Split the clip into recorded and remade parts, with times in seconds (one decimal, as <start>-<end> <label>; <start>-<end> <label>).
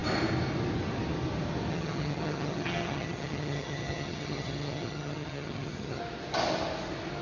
0.0-1.7 recorded; 1.7-6.0 remade; 6.0-7.2 recorded